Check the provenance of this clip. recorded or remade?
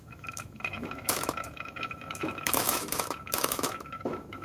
remade